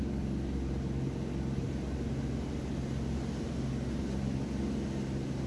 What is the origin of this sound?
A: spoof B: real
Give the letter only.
B